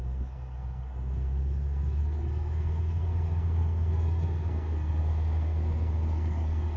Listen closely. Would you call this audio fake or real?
fake